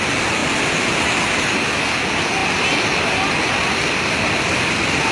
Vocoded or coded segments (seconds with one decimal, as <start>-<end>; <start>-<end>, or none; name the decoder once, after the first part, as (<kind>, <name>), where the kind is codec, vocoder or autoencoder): 2.4-5.1 (vocoder, BigVGAN v2)